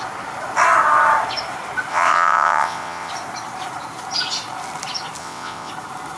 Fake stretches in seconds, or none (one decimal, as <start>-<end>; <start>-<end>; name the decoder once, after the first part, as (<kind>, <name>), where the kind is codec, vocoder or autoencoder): 1.9-3.1 (vocoder, WaveNeXt); 5.2-5.7